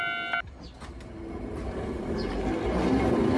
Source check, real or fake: real